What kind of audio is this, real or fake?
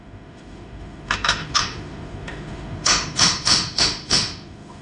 fake